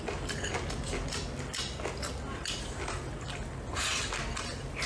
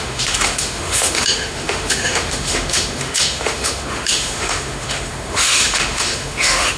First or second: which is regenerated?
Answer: second